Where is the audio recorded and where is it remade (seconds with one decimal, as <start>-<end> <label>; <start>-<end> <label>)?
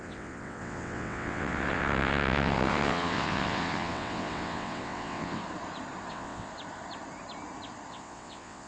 0.0-5.4 remade; 5.4-6.1 recorded; 6.1-6.5 remade; 6.5-7.9 recorded; 7.9-8.7 remade